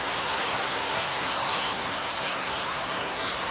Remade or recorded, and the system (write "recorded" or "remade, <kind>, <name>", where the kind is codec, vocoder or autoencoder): remade, codec, SNAC